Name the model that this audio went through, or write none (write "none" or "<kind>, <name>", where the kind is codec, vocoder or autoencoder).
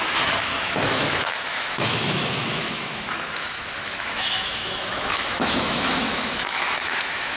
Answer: autoencoder, DAC-VAE